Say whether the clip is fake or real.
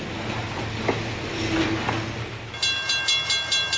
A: real